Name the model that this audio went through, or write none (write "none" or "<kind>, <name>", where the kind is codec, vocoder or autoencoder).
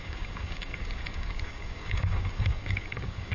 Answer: codec, DAC